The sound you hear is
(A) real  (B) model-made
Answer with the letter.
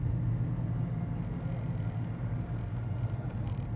A